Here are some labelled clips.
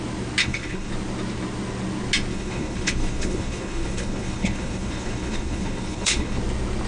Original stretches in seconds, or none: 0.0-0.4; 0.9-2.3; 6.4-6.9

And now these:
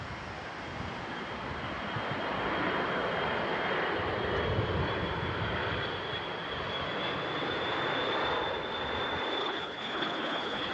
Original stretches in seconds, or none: 0.0-9.4

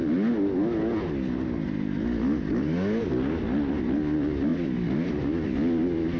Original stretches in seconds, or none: 0.0-6.2

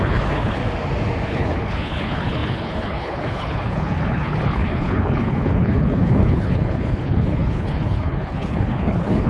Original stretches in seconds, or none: 0.6-1.3

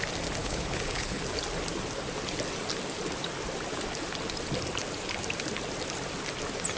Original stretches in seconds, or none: 0.0-0.4; 1.2-6.8